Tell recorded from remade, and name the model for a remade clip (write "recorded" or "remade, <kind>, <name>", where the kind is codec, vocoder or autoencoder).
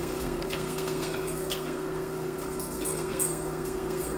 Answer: remade, codec, SNAC